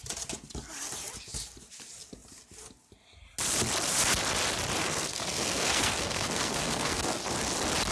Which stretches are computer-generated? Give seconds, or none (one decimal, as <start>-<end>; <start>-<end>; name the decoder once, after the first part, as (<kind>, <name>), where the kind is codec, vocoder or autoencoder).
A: 4.8-7.2 (codec, SNAC)